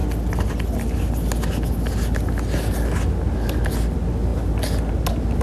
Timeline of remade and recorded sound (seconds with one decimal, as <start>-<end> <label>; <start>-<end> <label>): 0.0-5.4 recorded